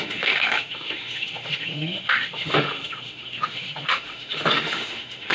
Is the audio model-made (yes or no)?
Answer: yes